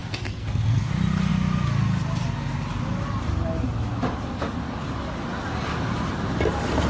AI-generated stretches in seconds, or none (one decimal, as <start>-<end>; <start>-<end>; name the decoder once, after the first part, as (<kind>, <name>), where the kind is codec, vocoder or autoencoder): 0.0-0.9 (codec, SNAC)